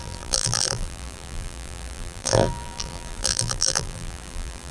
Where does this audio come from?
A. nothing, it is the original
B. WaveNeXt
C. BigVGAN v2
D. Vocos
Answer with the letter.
C